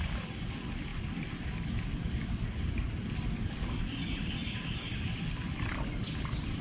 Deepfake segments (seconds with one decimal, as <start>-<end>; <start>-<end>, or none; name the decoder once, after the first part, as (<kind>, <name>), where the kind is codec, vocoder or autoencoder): none